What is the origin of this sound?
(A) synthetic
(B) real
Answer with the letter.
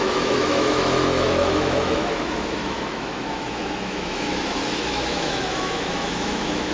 A